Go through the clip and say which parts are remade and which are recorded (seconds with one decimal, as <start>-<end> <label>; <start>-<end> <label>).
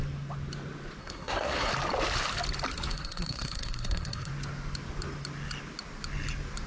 0.0-1.0 recorded; 1.0-1.7 remade; 1.7-2.9 recorded; 2.9-4.3 remade; 4.3-6.7 recorded